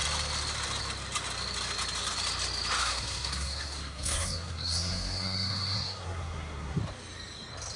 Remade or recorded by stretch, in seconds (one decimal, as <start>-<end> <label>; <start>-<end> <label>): 0.0-2.8 recorded; 2.8-6.8 remade; 6.8-7.8 recorded